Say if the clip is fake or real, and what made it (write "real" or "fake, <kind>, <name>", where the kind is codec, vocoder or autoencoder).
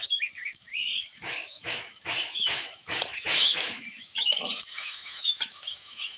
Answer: fake, autoencoder, DAC-VAE